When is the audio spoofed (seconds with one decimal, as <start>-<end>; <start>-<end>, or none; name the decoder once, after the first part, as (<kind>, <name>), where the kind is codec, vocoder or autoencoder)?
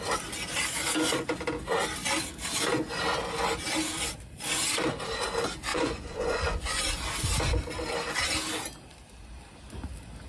5.7-6.8 (vocoder, Vocos)